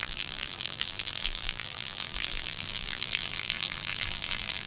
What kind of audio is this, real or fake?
fake